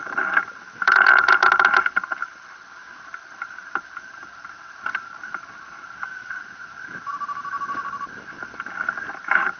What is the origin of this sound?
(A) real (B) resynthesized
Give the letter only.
A